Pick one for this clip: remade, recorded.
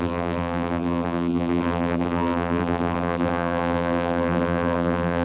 remade